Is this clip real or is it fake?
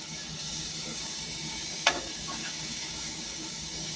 fake